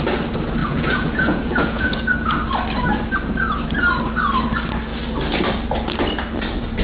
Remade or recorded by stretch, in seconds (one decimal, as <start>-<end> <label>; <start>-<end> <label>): 0.0-0.6 recorded; 0.6-2.3 remade; 2.3-6.8 recorded